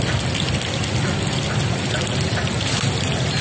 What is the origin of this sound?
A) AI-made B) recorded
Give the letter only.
B